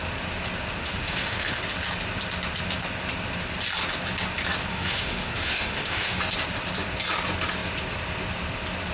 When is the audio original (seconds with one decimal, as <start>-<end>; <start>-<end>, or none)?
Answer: 0.0-0.8; 1.6-4.7; 6.2-8.9